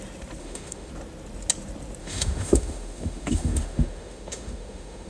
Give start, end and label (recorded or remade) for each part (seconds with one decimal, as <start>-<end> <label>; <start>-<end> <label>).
0.0-0.4 recorded; 0.4-0.9 remade; 0.9-2.0 recorded; 2.0-5.1 remade